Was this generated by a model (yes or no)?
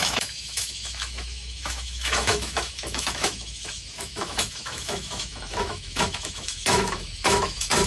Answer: yes